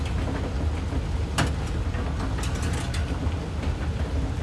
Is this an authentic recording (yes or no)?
yes